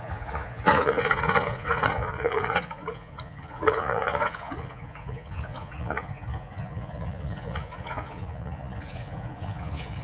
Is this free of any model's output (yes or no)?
no